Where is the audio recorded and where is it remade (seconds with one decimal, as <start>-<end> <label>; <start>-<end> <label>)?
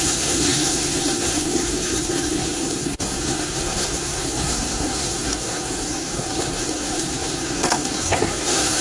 0.0-8.8 remade